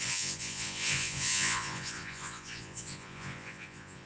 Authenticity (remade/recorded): remade